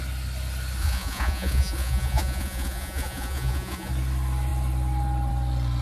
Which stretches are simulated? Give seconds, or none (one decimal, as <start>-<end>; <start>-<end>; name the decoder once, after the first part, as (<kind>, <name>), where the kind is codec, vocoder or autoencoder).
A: 0.8-3.9 (vocoder, Vocos)